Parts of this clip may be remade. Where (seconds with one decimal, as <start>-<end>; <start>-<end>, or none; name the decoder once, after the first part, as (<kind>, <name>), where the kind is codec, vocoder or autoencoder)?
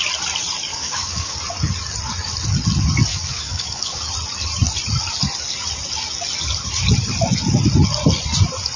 0.7-1.4 (codec, DAC); 3.1-4.0